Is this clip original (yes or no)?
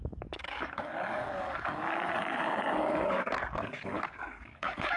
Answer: no